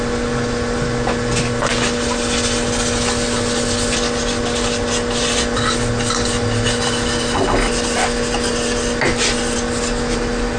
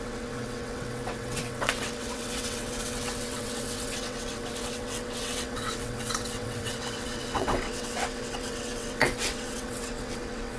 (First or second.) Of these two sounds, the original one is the first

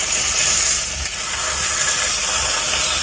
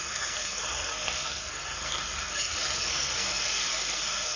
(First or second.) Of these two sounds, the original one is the first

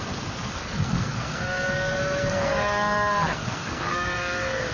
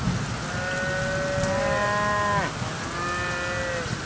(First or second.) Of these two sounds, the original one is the second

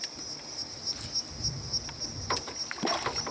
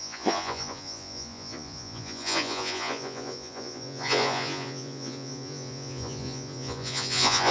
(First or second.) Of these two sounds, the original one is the first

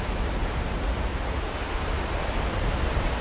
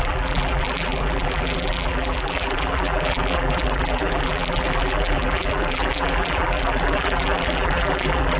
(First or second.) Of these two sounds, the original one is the first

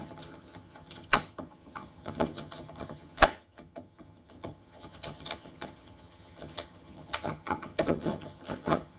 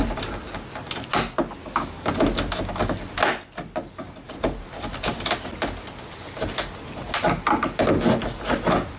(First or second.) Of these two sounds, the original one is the second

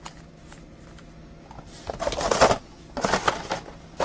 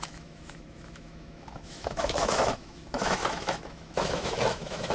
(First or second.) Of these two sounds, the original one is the first